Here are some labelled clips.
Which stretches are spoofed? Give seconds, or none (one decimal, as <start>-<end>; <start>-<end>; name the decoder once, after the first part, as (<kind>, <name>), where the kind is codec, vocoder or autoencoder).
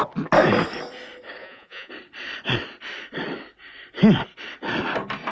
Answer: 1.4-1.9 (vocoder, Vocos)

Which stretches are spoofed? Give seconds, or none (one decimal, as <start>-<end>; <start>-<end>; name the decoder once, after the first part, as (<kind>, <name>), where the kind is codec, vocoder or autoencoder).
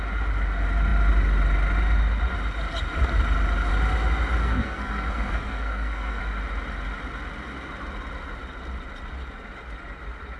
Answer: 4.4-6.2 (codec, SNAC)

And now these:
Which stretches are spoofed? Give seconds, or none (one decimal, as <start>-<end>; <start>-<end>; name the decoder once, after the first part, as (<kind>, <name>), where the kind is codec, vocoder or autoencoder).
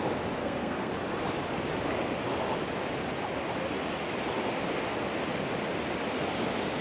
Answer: 0.4-0.9 (codec, SNAC)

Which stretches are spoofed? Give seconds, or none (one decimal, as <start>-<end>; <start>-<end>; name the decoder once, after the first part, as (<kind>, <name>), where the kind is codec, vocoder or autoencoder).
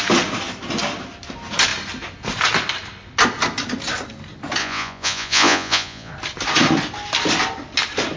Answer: 4.6-6.1 (vocoder, Vocos)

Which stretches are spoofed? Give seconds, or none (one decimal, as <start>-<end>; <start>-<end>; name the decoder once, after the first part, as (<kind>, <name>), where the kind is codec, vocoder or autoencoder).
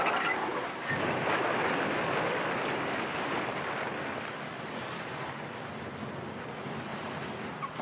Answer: 6.9-7.8 (vocoder, BigVGAN v2)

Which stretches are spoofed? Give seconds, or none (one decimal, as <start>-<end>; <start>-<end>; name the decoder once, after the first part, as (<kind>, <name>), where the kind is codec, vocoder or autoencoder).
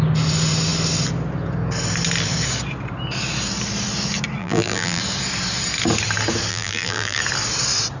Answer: 4.4-5.0 (vocoder, BigVGAN v2); 6.5-7.2